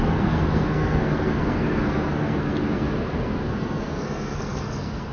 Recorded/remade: remade